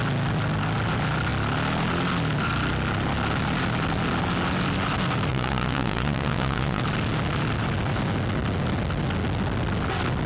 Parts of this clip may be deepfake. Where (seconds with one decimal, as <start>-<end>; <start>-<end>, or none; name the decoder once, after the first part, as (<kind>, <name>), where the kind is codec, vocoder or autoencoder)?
5.3-6.8 (vocoder, Vocos)